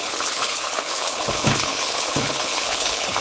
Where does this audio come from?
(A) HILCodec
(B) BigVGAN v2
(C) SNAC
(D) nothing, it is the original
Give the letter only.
A